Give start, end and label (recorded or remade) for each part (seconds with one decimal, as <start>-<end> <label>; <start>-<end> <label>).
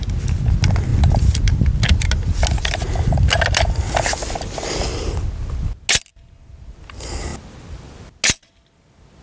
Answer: 0.0-9.2 recorded